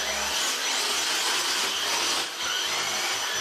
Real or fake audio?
real